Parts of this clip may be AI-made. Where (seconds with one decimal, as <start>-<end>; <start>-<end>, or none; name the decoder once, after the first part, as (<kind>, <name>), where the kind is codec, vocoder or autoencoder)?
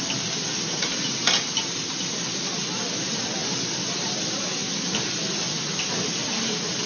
none